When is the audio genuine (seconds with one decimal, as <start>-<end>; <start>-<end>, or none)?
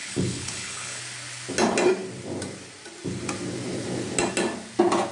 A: 1.0-5.1